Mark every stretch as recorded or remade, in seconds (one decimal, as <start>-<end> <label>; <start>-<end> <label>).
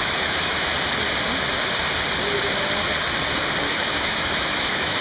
0.0-0.7 remade; 0.7-3.7 recorded; 3.7-5.0 remade